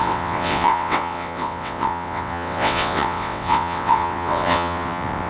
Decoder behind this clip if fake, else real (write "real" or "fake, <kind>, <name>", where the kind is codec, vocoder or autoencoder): fake, vocoder, WaveNeXt